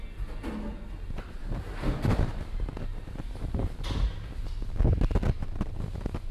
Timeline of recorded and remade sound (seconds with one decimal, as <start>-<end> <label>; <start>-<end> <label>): 0.0-1.4 recorded; 1.4-4.8 remade; 4.8-6.3 recorded